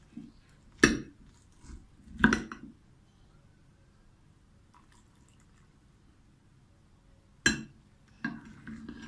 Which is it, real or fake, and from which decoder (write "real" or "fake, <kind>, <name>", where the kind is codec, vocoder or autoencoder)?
real